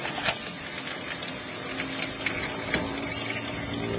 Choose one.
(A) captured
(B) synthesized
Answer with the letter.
A